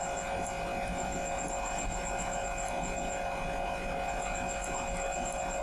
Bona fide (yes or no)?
yes